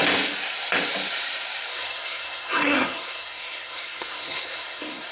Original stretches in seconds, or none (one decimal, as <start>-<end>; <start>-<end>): 0.0-1.7